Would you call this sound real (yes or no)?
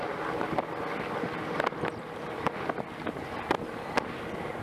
yes